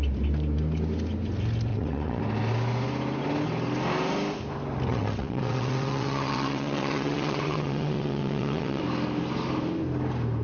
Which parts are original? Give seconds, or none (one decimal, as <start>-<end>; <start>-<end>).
0.0-1.7; 2.2-4.9; 8.8-10.4